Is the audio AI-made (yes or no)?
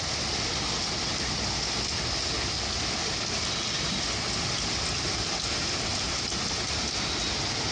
no